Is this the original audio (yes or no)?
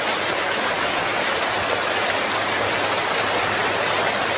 yes